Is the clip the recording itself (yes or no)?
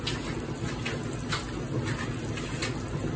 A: yes